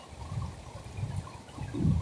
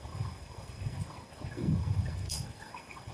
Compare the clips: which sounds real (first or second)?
first